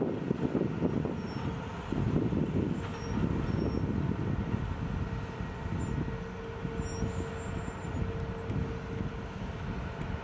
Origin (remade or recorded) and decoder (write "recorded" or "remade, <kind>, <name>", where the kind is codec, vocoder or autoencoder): recorded